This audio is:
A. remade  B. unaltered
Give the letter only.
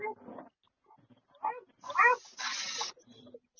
B